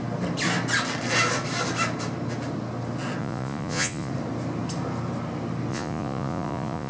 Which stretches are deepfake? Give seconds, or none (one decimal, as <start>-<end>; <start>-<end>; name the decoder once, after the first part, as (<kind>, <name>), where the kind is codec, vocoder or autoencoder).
3.2-4.1 (vocoder, Vocos); 5.7-6.9